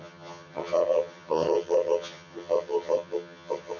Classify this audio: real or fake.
fake